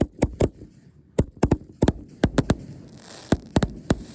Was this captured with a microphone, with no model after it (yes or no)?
yes